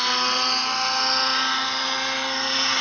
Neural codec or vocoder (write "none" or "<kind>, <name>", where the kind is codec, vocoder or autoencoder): none